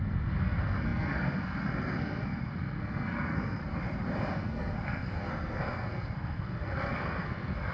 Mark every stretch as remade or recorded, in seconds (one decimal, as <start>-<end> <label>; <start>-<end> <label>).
0.0-3.6 remade; 3.6-4.3 recorded; 4.3-7.7 remade